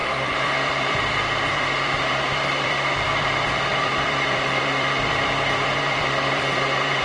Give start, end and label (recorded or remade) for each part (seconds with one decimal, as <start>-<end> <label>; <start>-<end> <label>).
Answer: 0.0-7.0 remade